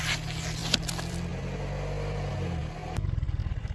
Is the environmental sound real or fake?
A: real